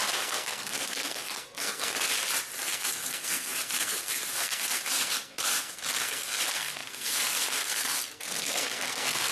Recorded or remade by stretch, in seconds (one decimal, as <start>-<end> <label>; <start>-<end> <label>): 0.0-2.1 remade; 2.1-2.6 recorded; 2.6-9.3 remade